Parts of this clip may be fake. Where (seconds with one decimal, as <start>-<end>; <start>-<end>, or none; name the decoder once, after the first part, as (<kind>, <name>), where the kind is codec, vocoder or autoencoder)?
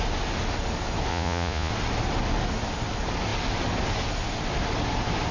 1.1-1.7 (vocoder, Vocos)